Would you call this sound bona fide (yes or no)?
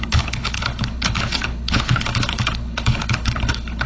no